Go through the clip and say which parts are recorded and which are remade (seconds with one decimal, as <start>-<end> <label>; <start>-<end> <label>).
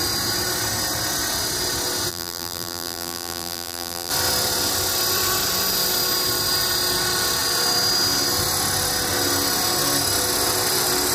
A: 0.0-2.1 recorded; 2.1-4.1 remade; 4.1-11.1 recorded